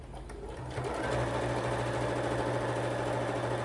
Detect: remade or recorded recorded